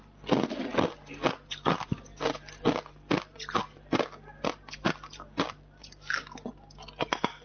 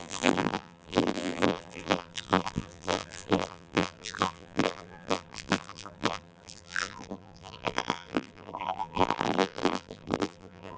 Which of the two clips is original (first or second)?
first